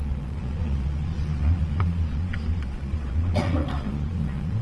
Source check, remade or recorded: remade